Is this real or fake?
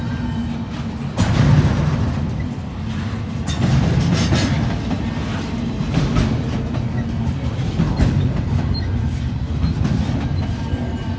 real